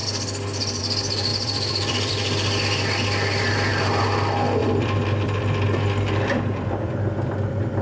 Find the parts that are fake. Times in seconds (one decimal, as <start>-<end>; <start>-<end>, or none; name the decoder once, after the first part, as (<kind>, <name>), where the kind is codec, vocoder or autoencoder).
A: 1.3-2.1 (vocoder, BigVGAN v2); 4.6-7.8